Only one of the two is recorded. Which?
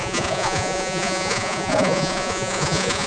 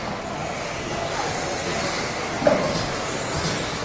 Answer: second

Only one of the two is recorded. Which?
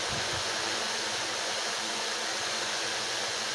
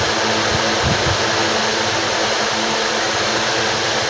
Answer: second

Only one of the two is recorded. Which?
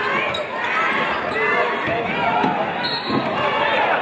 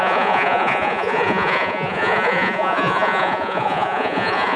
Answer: first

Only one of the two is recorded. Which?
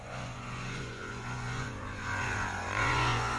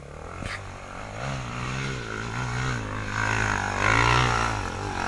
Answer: second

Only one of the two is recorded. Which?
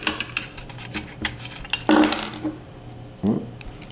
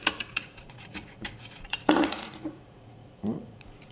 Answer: first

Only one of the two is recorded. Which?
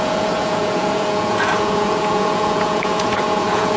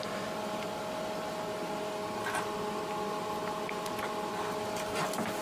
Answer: second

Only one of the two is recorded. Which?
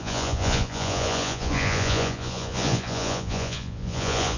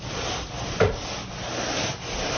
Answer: second